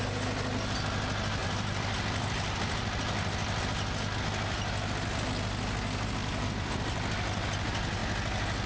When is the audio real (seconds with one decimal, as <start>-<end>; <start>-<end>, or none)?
0.0-1.4; 3.6-6.2; 6.8-8.7